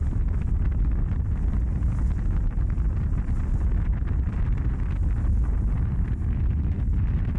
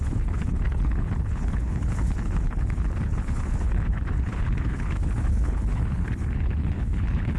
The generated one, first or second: second